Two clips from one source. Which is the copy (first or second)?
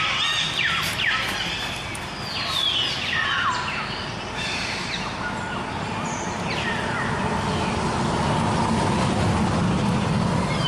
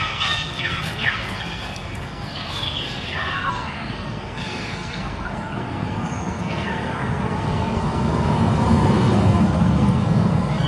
second